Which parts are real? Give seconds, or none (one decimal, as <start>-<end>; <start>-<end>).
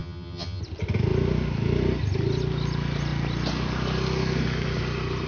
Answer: 0.6-5.3